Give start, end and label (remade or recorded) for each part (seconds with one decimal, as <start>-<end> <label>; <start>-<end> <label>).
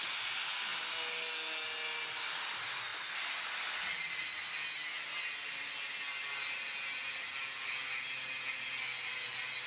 0.0-9.7 recorded